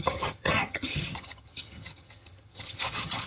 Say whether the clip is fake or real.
fake